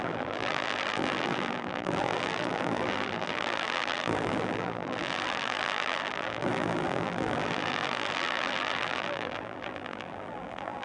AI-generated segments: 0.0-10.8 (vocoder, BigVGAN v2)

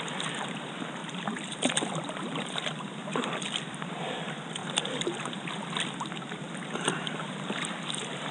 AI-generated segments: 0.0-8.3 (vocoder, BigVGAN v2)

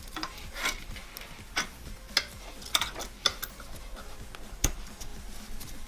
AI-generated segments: 0.0-1.0 (vocoder, BigVGAN v2); 4.5-5.1